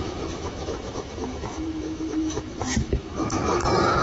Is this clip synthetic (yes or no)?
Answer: yes